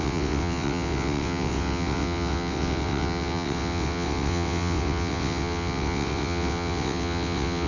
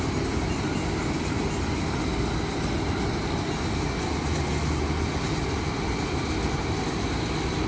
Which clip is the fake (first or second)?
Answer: first